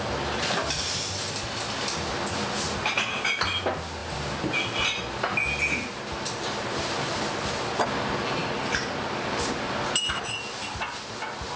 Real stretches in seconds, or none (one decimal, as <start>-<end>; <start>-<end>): 0.0-11.6